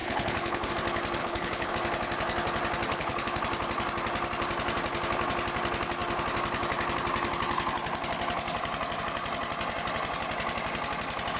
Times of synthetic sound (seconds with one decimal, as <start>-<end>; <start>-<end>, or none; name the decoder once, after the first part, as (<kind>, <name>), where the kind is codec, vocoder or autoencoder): 0.0-0.7 (codec, HILCodec); 1.2-1.7; 2.9-3.4